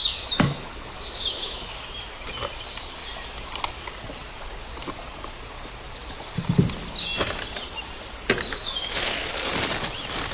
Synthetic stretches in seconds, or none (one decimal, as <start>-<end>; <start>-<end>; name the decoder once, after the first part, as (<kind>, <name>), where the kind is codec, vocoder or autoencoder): 0.0-2.2 (autoencoder, DAC-VAE); 8.5-9.3